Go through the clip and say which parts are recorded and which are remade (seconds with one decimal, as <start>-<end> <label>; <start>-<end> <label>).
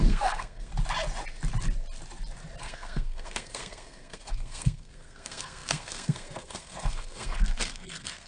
0.0-0.7 remade; 0.7-2.6 recorded; 2.6-8.3 remade